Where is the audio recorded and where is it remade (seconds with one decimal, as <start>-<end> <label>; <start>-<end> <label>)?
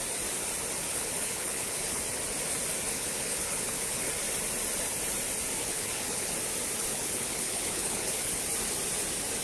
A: 0.0-0.9 recorded; 0.9-2.0 remade; 2.0-2.9 recorded; 2.9-4.1 remade; 4.1-5.6 recorded; 5.6-6.3 remade; 6.3-6.9 recorded; 6.9-8.4 remade; 8.4-9.4 recorded